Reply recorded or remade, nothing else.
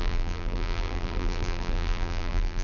remade